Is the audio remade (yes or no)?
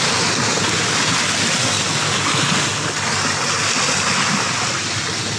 no